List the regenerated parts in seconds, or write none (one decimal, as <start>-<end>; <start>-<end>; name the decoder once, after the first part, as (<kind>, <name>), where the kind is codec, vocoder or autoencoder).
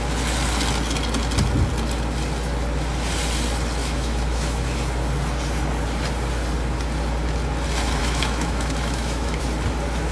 3.8-4.6 (autoencoder, DAC-VAE); 8.0-9.4